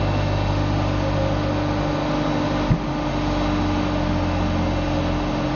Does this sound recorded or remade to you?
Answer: recorded